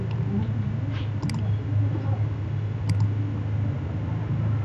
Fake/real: real